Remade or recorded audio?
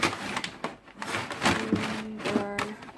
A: recorded